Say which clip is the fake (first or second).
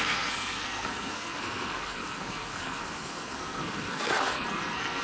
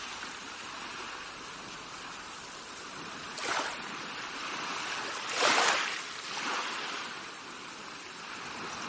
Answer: first